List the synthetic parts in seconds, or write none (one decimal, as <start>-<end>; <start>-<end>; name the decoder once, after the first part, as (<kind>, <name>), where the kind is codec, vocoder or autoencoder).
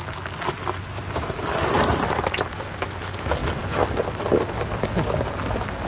none